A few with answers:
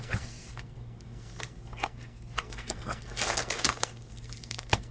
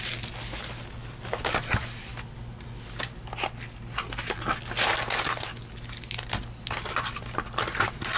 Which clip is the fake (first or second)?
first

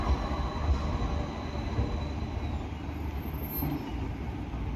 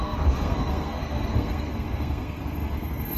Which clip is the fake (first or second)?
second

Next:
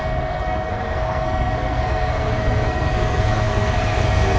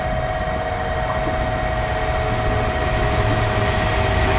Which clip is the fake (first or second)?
first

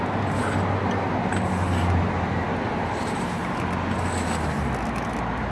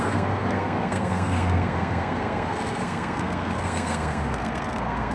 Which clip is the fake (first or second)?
second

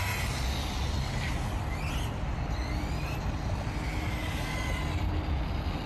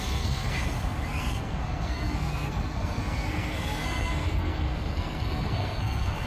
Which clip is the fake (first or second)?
second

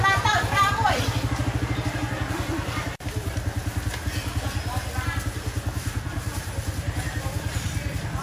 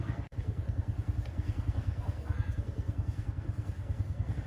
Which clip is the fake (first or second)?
second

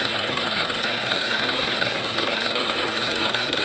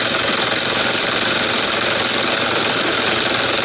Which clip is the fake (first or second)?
first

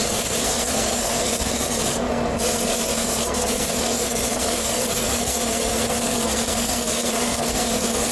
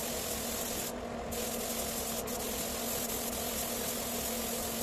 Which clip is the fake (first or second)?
first